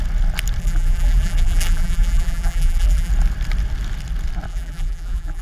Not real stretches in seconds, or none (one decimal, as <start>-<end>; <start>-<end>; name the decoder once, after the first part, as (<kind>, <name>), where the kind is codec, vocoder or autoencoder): 0.6-3.1 (vocoder, BigVGAN v2); 4.5-5.4